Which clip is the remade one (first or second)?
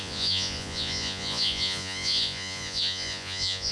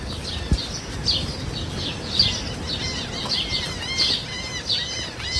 first